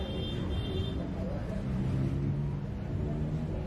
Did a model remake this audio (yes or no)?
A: no